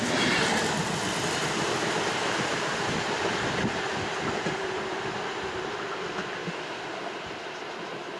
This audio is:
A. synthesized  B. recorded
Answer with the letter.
A